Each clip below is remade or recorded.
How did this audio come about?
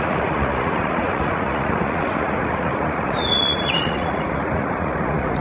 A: remade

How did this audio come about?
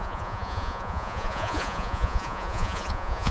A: remade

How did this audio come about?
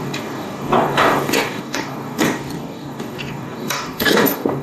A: remade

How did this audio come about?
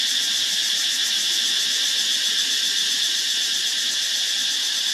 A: recorded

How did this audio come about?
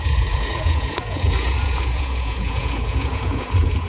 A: remade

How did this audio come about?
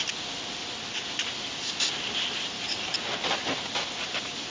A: recorded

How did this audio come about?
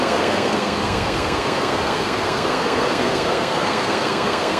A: remade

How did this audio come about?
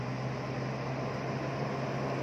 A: recorded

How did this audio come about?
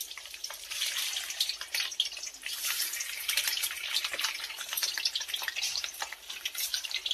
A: remade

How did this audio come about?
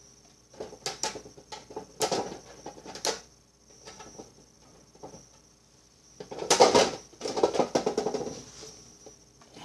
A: recorded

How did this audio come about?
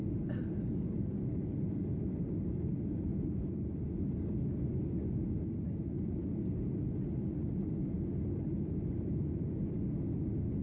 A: recorded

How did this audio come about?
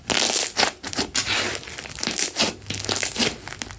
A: recorded